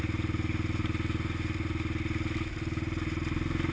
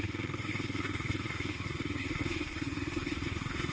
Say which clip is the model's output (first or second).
second